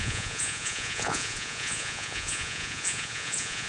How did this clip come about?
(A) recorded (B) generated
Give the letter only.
B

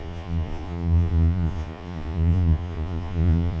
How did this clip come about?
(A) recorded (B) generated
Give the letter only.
B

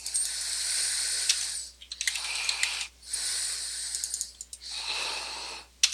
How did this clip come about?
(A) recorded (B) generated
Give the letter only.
A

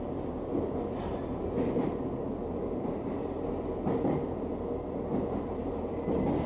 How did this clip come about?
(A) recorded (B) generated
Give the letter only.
A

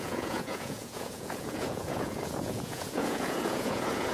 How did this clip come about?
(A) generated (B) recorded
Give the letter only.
A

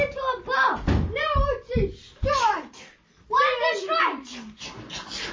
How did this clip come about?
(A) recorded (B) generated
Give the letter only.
A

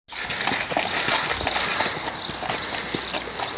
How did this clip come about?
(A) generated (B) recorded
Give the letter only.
B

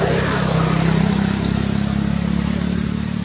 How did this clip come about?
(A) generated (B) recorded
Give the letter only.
B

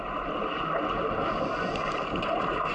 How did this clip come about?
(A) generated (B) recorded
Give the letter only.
B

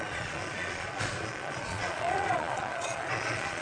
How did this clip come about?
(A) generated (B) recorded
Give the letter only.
A